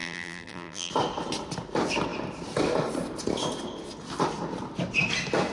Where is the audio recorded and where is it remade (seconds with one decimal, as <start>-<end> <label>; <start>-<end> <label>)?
0.0-0.9 remade; 0.9-5.5 recorded